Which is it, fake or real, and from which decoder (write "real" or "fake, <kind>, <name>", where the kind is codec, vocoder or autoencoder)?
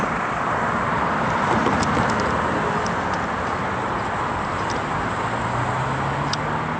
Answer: real